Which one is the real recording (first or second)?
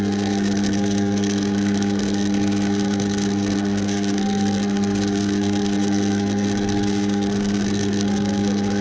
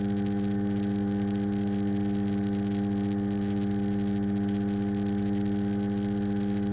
second